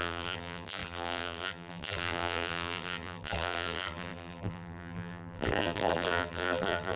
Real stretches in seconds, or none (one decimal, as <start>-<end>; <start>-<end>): none